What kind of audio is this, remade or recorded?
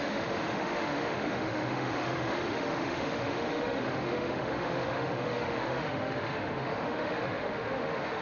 remade